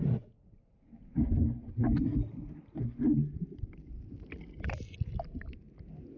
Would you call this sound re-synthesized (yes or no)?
no